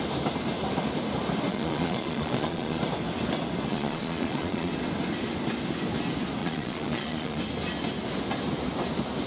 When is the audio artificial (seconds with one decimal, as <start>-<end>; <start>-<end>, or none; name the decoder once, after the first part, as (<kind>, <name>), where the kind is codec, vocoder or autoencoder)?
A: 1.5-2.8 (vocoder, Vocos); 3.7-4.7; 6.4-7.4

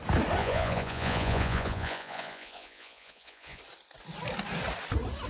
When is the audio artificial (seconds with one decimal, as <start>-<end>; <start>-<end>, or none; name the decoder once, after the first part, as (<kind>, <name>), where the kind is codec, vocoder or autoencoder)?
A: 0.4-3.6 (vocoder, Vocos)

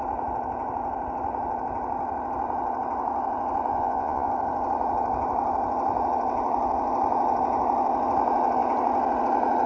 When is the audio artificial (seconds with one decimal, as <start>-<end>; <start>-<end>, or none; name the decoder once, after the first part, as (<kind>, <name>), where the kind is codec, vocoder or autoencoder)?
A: 3.7-4.3 (vocoder, Vocos)

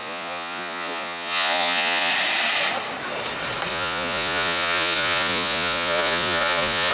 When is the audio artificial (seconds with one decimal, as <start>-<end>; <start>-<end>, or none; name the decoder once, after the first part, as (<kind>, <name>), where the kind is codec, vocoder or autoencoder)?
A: 0.0-2.1 (vocoder, Vocos); 3.7-6.9